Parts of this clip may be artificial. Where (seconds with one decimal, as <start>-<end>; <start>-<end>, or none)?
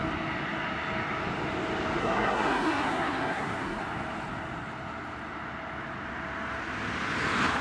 2.0-3.8